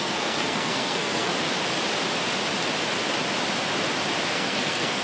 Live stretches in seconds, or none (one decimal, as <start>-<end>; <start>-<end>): 1.3-4.3